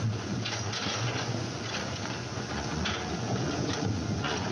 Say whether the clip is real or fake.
fake